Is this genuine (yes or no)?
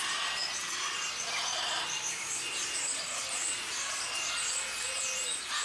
no